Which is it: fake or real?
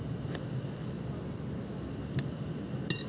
real